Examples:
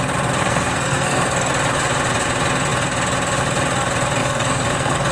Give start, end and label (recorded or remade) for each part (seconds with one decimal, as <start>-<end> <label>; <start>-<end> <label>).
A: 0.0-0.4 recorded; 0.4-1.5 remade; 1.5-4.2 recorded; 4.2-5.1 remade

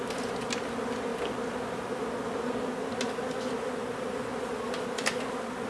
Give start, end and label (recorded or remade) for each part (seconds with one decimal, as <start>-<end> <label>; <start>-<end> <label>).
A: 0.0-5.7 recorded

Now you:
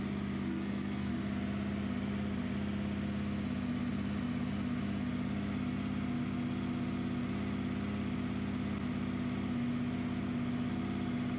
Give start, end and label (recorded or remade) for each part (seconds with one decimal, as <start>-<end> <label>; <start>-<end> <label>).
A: 0.0-0.5 recorded; 0.5-1.1 remade; 1.1-11.4 recorded

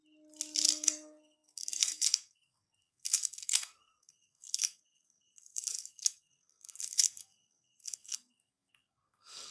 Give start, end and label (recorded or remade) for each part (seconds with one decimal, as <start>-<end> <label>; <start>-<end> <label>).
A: 0.0-0.7 recorded; 0.7-9.5 remade

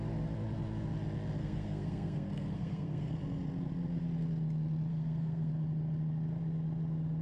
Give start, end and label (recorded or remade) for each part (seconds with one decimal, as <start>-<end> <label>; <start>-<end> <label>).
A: 0.0-1.4 recorded; 1.4-3.1 remade; 3.1-4.9 recorded; 4.9-5.5 remade; 5.5-7.2 recorded